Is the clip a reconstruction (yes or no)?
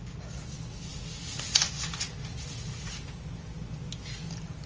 no